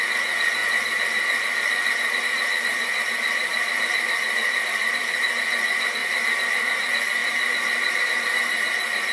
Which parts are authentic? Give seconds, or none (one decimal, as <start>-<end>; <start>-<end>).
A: 0.0-0.6; 2.2-2.7; 4.9-6.0; 6.8-7.2; 8.0-9.1